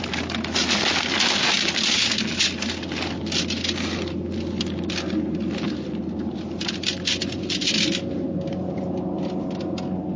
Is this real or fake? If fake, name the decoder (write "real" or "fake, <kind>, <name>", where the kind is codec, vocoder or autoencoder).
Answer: real